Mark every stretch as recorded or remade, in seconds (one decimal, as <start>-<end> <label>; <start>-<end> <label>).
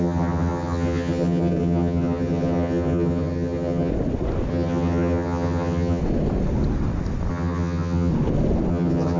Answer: 0.0-3.9 remade; 3.9-4.5 recorded; 4.5-6.0 remade; 6.0-7.3 recorded; 7.3-8.1 remade; 8.1-8.7 recorded; 8.7-9.2 remade